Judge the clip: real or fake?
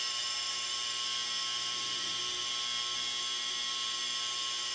fake